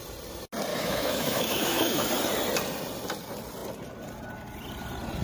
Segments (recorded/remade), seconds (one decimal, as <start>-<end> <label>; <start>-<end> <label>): 0.0-0.7 recorded; 0.7-2.1 remade; 2.1-5.2 recorded